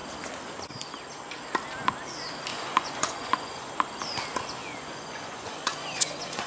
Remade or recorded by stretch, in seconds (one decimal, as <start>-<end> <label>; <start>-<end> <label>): 0.0-2.5 recorded; 2.5-3.7 remade; 3.7-4.6 recorded; 4.6-6.5 remade